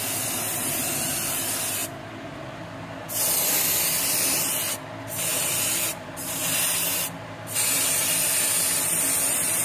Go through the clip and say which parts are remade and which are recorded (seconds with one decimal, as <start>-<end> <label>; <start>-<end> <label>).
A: 0.0-5.3 recorded; 5.3-6.5 remade; 6.5-9.6 recorded